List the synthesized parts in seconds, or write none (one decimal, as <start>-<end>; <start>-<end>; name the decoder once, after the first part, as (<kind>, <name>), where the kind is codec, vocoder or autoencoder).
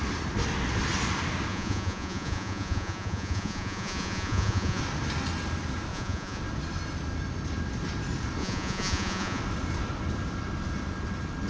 1.5-4.8 (vocoder, Vocos); 5.9-6.4; 8.4-9.4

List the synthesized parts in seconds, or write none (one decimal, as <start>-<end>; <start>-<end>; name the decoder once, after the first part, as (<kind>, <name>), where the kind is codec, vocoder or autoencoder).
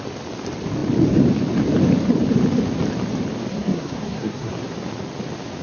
3.5-4.5 (codec, SNAC)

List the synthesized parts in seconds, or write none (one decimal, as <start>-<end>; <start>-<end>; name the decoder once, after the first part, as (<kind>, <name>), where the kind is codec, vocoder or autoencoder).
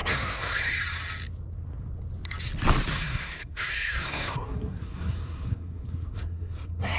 0.0-0.6 (codec, SNAC); 2.9-7.0